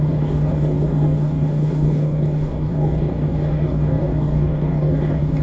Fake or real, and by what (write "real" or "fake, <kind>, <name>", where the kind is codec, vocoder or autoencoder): fake, codec, DAC